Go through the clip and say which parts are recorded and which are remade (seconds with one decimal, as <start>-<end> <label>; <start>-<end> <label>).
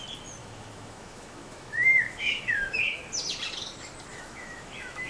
0.0-0.4 recorded; 0.4-3.0 remade; 3.0-4.1 recorded; 4.1-5.1 remade